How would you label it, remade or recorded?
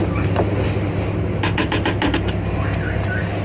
recorded